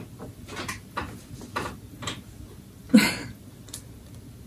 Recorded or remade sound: recorded